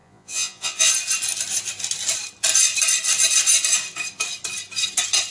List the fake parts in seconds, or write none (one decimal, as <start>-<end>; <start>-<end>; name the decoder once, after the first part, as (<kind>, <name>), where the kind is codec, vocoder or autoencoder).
0.0-0.9 (vocoder, Vocos)